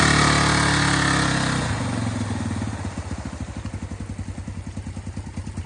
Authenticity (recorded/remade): recorded